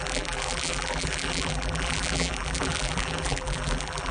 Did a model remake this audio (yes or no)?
yes